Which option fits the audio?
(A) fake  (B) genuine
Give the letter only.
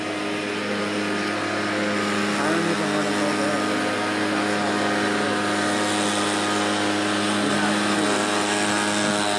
B